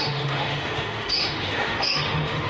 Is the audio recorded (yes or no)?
no